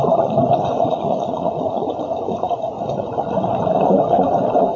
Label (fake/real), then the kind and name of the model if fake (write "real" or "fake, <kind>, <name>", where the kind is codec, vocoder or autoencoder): fake, vocoder, Vocos